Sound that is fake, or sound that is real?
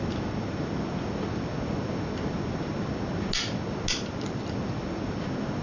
real